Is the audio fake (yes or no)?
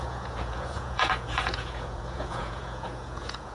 yes